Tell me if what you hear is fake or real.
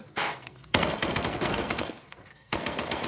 fake